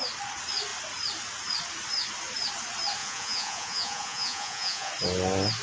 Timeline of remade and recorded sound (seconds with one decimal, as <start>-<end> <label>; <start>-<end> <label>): 0.0-3.0 recorded; 3.0-4.9 remade; 4.9-5.6 recorded